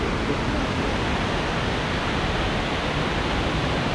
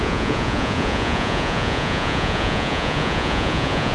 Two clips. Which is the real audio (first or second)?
first